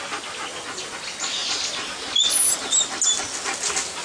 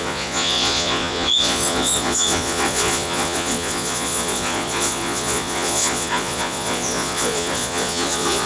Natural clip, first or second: first